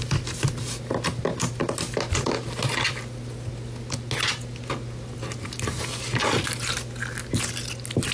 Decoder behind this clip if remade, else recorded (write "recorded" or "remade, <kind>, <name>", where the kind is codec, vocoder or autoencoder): recorded